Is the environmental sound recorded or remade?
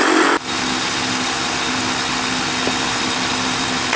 recorded